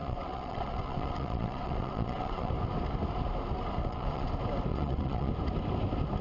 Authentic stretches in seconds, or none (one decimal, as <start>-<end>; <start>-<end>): 2.5-3.8; 4.3-4.7; 5.3-6.2